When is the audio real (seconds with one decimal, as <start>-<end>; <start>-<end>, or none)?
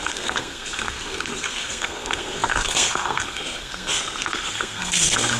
none